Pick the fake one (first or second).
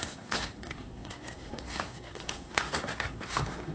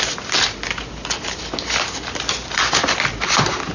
first